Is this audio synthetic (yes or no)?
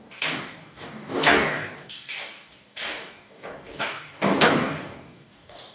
yes